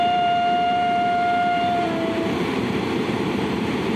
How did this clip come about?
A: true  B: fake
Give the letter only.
B